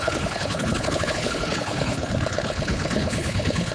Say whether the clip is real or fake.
fake